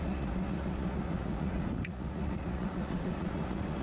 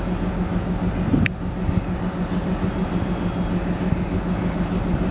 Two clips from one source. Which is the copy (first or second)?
first